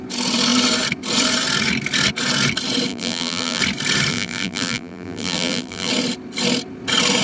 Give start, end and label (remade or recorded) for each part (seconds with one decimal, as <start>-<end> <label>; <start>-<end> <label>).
0.0-2.9 recorded; 2.9-3.6 remade; 3.6-4.1 recorded; 4.1-5.9 remade; 5.9-7.2 recorded